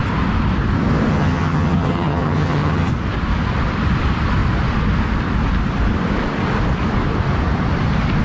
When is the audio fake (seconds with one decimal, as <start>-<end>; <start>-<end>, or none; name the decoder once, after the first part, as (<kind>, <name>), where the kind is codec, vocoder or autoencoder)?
1.1-2.9 (vocoder, HiFi-GAN)